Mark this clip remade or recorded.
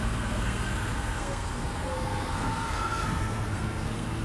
remade